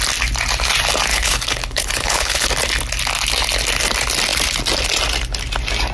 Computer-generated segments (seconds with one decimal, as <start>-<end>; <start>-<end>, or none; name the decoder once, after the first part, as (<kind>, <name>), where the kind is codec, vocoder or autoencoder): 1.1-2.5 (codec, HILCodec)